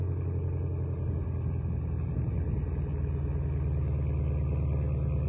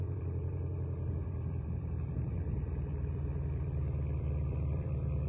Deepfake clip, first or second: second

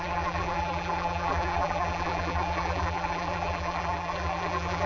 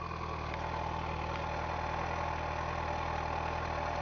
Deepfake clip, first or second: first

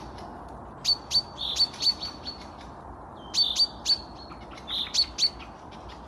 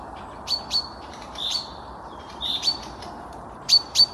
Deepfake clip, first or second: second